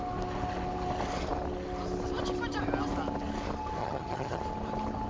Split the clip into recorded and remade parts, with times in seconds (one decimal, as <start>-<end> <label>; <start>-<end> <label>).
0.0-3.8 recorded; 3.8-4.4 remade; 4.4-5.1 recorded